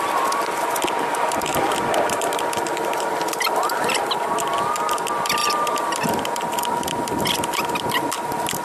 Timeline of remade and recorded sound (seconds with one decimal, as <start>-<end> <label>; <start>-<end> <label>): 0.0-8.6 recorded